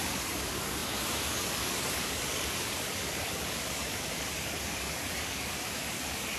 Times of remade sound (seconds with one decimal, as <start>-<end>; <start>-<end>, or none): 0.0-6.4

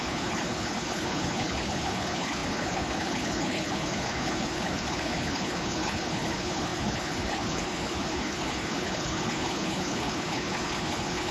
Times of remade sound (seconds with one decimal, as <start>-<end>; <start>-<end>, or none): 0.0-11.3

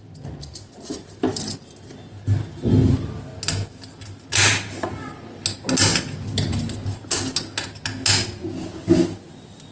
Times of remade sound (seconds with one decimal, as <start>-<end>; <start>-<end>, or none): none

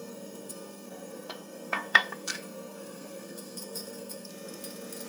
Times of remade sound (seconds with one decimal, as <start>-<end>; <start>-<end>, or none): 0.0-4.3

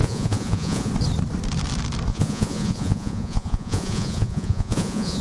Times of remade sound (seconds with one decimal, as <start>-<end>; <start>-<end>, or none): 0.0-0.9; 2.1-5.2

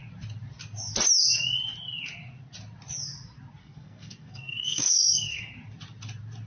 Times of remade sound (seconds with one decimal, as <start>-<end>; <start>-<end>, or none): 3.6-5.5